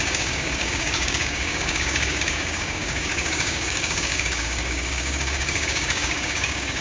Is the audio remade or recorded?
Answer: remade